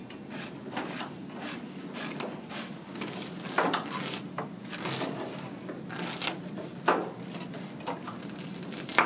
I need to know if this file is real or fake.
real